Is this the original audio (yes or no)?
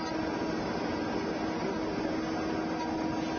yes